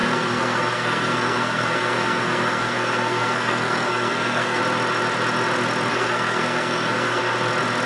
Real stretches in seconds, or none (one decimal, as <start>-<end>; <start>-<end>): 4.6-5.9; 7.2-7.9